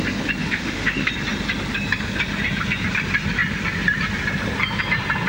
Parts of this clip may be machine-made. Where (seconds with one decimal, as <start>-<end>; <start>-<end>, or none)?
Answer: 0.4-1.1